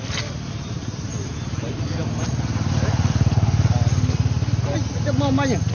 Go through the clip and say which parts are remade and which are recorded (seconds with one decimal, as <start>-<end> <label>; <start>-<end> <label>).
0.0-0.8 recorded; 0.8-1.3 remade; 1.3-5.7 recorded